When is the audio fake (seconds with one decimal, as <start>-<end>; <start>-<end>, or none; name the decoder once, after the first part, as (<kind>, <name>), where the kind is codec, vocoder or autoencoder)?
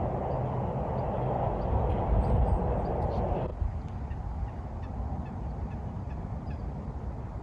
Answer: none